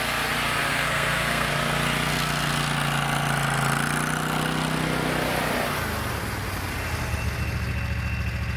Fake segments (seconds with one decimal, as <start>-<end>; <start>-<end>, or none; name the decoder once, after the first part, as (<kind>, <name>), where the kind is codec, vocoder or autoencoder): 0.7-1.5 (codec, SNAC)

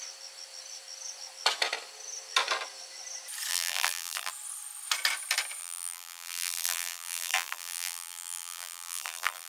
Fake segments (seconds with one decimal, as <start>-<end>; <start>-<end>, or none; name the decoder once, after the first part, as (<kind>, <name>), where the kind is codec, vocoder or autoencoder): 3.5-4.3 (vocoder, BigVGAN v2); 5.6-9.5

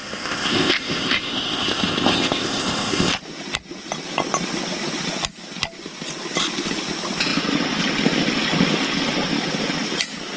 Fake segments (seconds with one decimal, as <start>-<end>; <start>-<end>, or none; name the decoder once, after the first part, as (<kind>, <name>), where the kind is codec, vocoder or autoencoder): 0.0-3.2 (codec, ZipCodec)

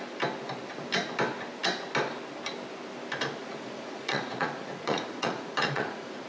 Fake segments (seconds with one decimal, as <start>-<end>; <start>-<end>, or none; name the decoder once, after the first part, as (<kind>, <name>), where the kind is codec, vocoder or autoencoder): 3.4-6.3 (vocoder, Vocos)

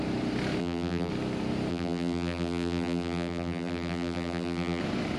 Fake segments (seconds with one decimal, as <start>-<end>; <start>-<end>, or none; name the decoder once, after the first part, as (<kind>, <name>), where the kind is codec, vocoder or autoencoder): 0.6-1.1 (vocoder, BigVGAN v2); 1.7-4.8

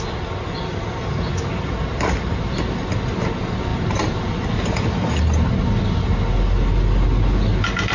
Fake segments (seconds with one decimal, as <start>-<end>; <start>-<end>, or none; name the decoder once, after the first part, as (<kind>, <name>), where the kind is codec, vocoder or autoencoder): none